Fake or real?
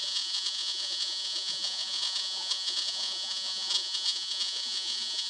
fake